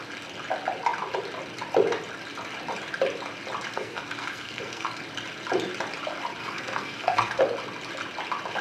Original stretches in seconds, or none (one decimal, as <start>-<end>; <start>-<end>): 0.0-3.7; 5.0-6.4; 7.4-8.6